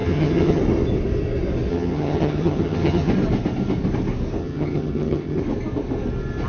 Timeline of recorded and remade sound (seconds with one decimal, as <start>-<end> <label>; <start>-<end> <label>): 0.0-0.6 remade; 0.6-1.7 recorded; 1.7-3.1 remade; 3.1-4.4 recorded; 4.4-5.4 remade; 5.4-6.5 recorded